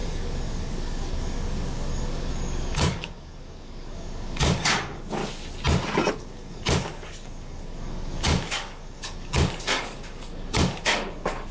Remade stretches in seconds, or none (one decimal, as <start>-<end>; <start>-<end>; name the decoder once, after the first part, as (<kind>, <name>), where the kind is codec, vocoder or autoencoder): 0.0-5.2 (codec, DAC); 6.1-11.5